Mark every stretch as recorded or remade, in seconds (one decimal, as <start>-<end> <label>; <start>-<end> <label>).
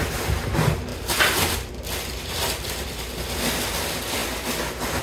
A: 0.0-0.9 recorded; 0.9-3.7 remade; 3.7-5.0 recorded